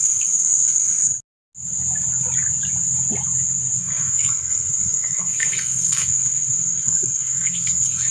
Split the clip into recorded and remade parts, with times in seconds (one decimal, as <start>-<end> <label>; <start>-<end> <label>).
0.0-1.1 remade; 1.1-3.8 recorded; 3.8-8.1 remade